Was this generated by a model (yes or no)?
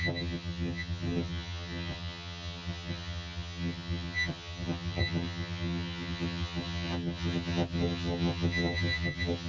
yes